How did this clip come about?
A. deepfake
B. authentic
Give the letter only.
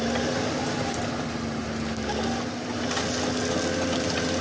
B